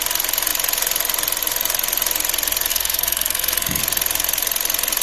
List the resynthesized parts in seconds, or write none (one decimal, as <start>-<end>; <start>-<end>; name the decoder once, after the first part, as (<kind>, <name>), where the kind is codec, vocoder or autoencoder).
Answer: 2.7-3.8 (codec, SNAC)